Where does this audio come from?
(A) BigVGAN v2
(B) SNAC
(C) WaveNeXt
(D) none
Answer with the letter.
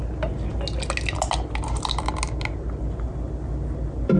D